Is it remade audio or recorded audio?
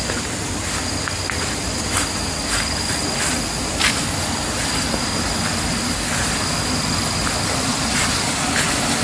recorded